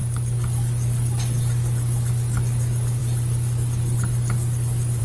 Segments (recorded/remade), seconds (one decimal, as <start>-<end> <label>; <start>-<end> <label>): 0.0-5.0 remade

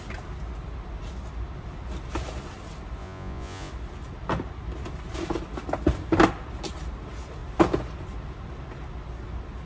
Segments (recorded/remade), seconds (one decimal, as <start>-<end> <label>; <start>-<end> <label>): 0.0-3.0 recorded; 3.0-3.7 remade; 3.7-9.7 recorded